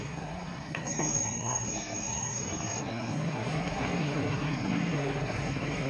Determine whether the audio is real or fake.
fake